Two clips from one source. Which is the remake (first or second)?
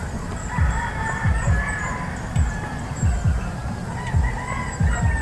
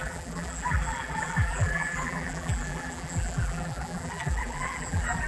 second